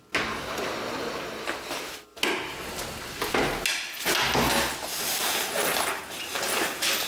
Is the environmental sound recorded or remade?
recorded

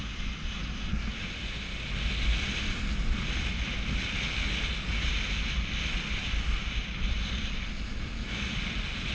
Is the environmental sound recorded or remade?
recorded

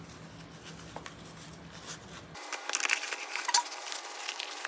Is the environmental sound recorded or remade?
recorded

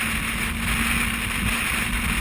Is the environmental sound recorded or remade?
recorded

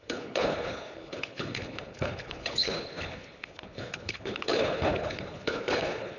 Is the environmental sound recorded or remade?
remade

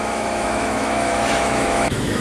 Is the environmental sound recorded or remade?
remade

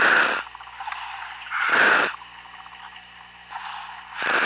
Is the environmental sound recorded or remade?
recorded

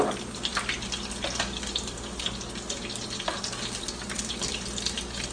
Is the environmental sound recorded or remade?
recorded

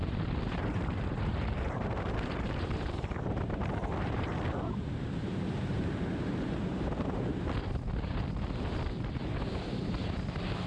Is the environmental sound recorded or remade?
remade